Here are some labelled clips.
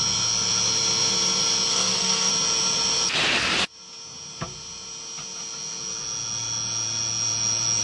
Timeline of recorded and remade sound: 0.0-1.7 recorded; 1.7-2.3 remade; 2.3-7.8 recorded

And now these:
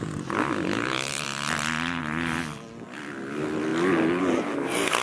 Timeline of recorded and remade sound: 0.0-5.0 recorded

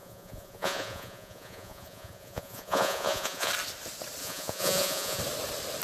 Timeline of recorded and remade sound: 0.0-3.5 remade; 3.5-4.2 recorded; 4.2-5.2 remade; 5.2-5.8 recorded

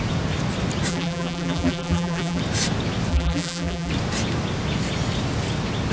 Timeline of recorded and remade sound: 0.0-0.9 recorded; 0.9-2.4 remade; 2.4-3.1 recorded; 3.1-3.9 remade; 3.9-5.9 recorded

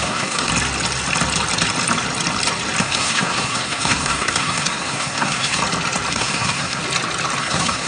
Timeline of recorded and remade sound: 0.0-0.5 remade; 0.5-2.8 recorded; 2.8-5.6 remade; 5.6-6.1 recorded; 6.1-6.8 remade; 6.8-7.4 recorded; 7.4-7.9 remade

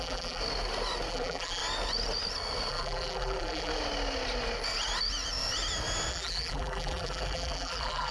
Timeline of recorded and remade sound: 0.0-0.4 remade; 0.4-1.1 recorded; 1.1-1.6 remade; 1.6-2.7 recorded; 2.7-3.7 remade; 3.7-6.1 recorded; 6.1-8.1 remade

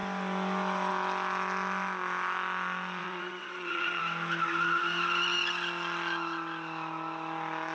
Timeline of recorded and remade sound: 0.0-3.0 recorded; 3.0-4.0 remade; 4.0-7.7 recorded

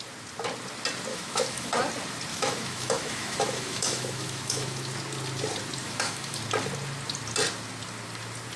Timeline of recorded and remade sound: 0.0-1.1 recorded; 1.1-1.7 remade; 1.7-2.3 recorded; 2.3-4.9 remade; 4.9-5.8 recorded; 5.8-6.4 remade; 6.4-8.6 recorded